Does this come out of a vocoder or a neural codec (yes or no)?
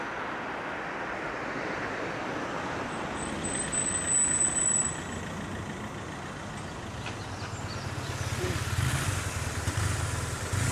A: no